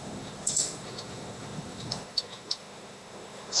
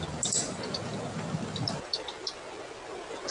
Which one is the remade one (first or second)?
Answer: first